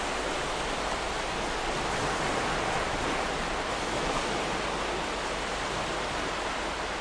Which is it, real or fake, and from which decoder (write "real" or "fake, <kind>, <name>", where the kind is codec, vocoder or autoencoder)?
real